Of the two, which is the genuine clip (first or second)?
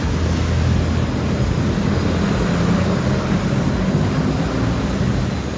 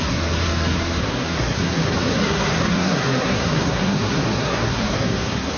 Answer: first